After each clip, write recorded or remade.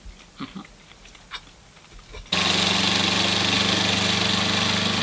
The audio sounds recorded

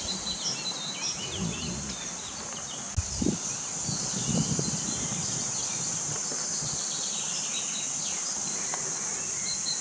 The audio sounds recorded